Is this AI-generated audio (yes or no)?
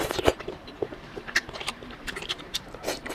yes